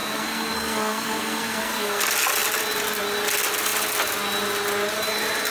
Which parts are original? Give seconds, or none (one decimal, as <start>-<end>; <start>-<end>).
2.0-5.5